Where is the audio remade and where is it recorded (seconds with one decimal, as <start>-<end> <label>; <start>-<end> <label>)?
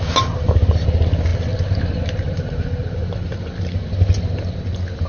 0.0-5.1 recorded